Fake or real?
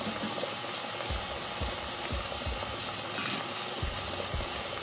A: real